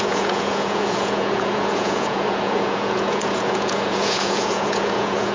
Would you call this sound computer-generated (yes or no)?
yes